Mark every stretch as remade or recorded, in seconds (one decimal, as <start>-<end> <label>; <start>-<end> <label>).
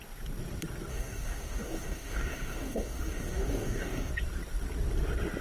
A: 0.0-0.9 recorded; 0.9-4.1 remade; 4.1-5.4 recorded